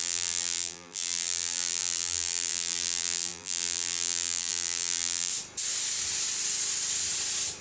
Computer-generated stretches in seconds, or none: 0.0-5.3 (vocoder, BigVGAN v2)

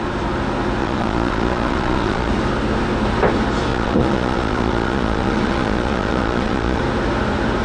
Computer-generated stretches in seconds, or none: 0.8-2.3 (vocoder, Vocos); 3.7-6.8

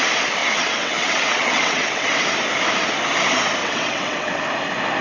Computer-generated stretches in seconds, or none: 0.4-2.2 (vocoder, WaveNeXt); 3.6-4.4

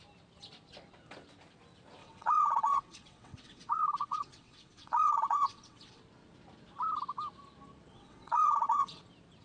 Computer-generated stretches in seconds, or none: 2.0-6.0 (vocoder, WaveNeXt); 7.9-9.0

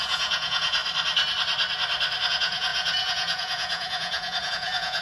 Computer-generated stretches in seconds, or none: 0.0-0.8 (vocoder, Vocos); 2.3-5.0